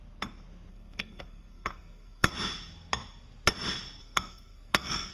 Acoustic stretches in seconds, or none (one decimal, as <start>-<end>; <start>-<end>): 0.0-0.7; 2.3-4.0